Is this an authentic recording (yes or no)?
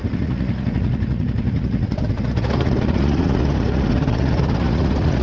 no